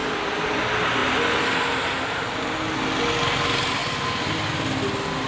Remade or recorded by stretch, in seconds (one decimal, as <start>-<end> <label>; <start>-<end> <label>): 0.0-1.0 recorded; 1.0-2.3 remade; 2.3-3.8 recorded; 3.8-4.5 remade; 4.5-5.3 recorded

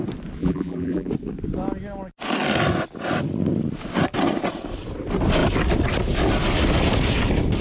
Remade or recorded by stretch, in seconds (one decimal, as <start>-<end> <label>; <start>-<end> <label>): 0.0-0.4 recorded; 0.4-1.1 remade; 1.1-7.6 recorded